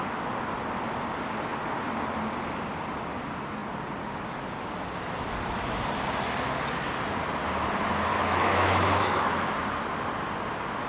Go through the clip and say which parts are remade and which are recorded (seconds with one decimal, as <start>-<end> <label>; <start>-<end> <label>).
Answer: 0.0-8.1 recorded; 8.1-9.5 remade; 9.5-10.9 recorded